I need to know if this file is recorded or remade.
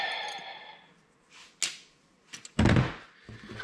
recorded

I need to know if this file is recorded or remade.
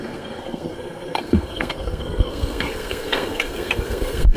remade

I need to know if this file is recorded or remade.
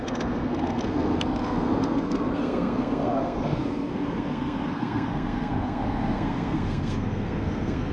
remade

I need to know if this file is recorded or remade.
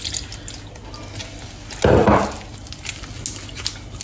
recorded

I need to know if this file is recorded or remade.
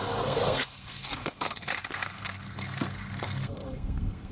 remade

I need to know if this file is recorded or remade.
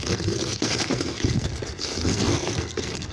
remade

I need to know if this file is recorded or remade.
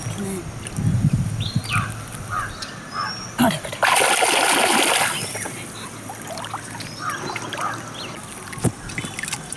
recorded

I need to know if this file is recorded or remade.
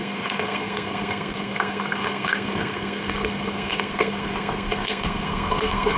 remade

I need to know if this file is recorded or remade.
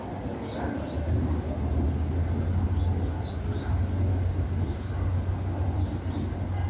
recorded